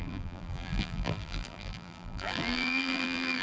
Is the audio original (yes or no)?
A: no